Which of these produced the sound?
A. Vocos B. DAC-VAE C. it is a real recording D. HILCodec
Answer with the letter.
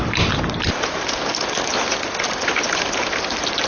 C